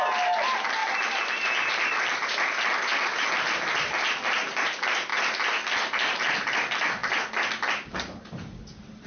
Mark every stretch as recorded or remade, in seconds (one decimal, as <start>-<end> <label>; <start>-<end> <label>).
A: 0.0-9.1 recorded

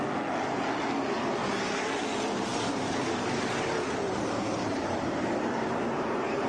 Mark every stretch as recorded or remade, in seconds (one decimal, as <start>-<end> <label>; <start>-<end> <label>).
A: 0.0-1.4 recorded; 1.4-2.0 remade; 2.0-2.5 recorded; 2.5-6.5 remade

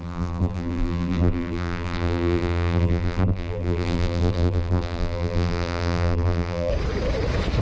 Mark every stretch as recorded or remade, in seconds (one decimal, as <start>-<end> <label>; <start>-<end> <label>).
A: 0.0-6.7 remade; 6.7-7.6 recorded

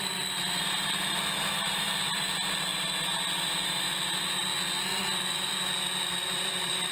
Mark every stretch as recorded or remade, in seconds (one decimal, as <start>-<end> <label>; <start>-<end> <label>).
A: 0.0-2.7 remade; 2.7-3.5 recorded; 3.5-4.5 remade; 4.5-5.0 recorded; 5.0-6.9 remade

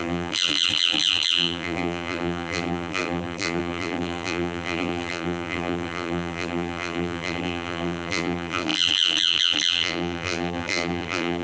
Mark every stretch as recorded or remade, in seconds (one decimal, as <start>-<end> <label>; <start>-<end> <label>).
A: 0.0-11.4 remade

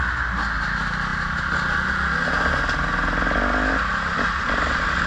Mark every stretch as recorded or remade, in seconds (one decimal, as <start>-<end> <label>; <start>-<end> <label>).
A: 0.0-5.1 recorded